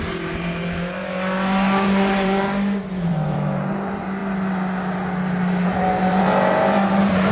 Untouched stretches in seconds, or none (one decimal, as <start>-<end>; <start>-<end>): 4.2-5.2